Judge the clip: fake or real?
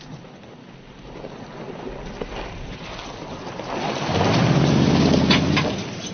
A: real